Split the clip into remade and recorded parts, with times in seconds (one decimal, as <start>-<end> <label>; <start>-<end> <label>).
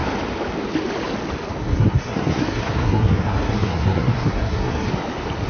0.0-1.6 recorded; 1.6-4.9 remade; 4.9-5.5 recorded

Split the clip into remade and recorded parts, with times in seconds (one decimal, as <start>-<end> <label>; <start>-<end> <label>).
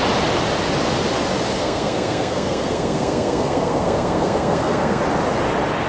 0.0-1.6 recorded; 1.6-5.0 remade; 5.0-5.9 recorded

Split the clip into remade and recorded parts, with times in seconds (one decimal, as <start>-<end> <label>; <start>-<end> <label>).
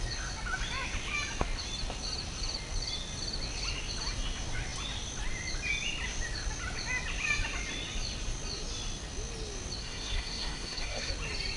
0.0-9.8 recorded; 9.8-11.1 remade; 11.1-11.6 recorded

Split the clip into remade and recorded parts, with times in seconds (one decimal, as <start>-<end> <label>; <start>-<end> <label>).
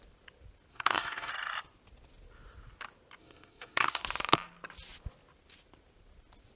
0.0-0.7 recorded; 0.7-1.3 remade; 1.3-3.2 recorded; 3.2-4.0 remade; 4.0-6.6 recorded